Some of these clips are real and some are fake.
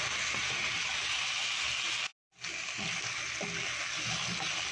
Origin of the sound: real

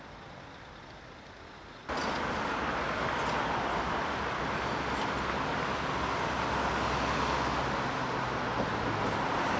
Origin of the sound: real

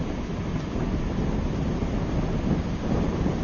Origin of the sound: real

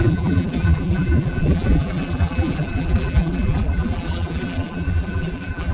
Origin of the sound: fake